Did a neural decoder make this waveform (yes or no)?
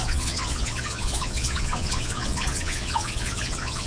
yes